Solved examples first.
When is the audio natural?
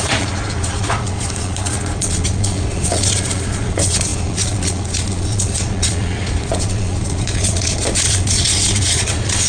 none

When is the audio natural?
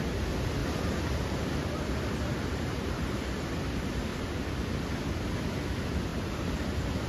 0.0-0.6; 3.3-4.1; 4.8-6.1